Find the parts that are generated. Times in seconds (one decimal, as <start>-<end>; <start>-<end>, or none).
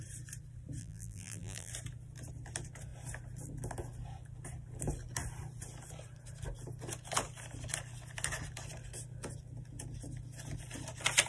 0.8-1.7